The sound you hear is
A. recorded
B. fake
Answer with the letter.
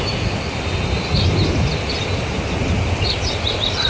A